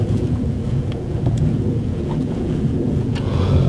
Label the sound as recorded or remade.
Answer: remade